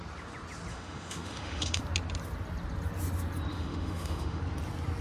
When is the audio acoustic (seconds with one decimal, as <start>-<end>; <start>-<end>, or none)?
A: 0.0-0.7; 1.8-3.5; 4.4-5.0